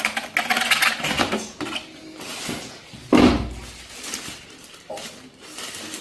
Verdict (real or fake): real